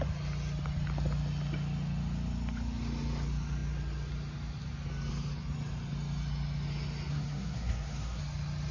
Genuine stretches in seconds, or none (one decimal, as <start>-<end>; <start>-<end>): 0.0-7.1; 8.2-8.7